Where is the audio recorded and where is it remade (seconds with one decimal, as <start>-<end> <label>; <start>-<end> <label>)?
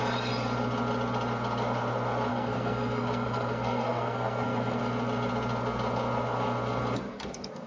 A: 0.0-2.3 recorded; 2.3-4.8 remade; 4.8-7.1 recorded; 7.1-7.7 remade